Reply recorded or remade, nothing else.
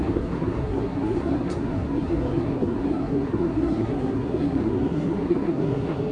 remade